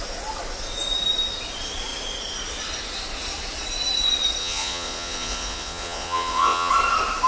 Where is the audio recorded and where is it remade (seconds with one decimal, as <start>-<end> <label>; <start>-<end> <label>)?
0.0-4.4 recorded; 4.4-6.7 remade; 6.7-7.3 recorded